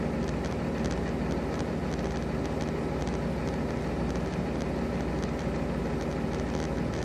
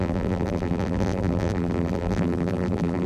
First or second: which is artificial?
second